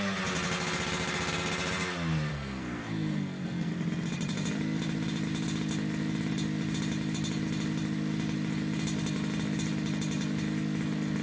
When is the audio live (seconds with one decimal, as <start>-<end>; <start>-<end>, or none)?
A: 0.0-2.3; 3.7-11.2